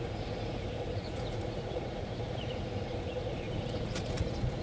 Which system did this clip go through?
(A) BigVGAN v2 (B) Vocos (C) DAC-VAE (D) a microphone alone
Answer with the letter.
B